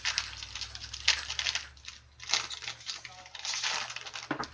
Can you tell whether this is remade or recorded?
recorded